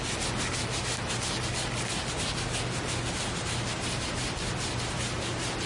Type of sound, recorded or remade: recorded